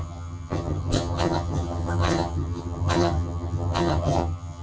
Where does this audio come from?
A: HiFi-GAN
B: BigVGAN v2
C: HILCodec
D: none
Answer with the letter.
A